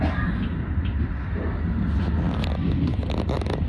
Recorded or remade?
recorded